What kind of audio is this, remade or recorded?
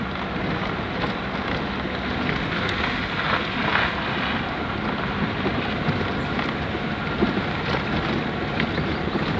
recorded